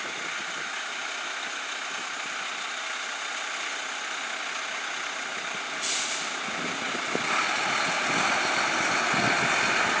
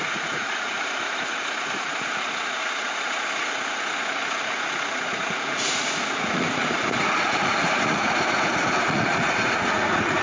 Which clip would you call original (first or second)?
first